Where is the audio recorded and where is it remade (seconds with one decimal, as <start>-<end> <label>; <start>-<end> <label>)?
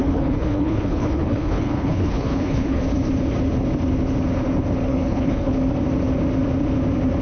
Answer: 0.0-2.8 remade; 2.8-4.9 recorded; 4.9-5.5 remade; 5.5-7.2 recorded